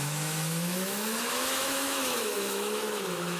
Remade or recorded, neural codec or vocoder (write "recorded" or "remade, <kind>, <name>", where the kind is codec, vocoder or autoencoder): remade, autoencoder, DAC-VAE